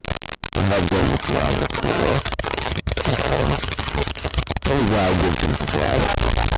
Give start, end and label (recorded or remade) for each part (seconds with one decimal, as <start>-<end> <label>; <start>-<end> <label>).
0.0-1.0 recorded; 1.0-4.8 remade; 4.8-5.5 recorded; 5.5-6.0 remade; 6.0-6.6 recorded